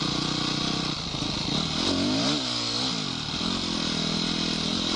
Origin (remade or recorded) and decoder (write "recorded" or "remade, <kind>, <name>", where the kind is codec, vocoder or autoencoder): recorded